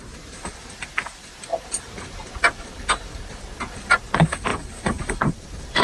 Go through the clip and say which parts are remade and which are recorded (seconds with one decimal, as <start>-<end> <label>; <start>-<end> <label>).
0.0-1.5 recorded; 1.5-3.4 remade; 3.4-4.5 recorded; 4.5-5.8 remade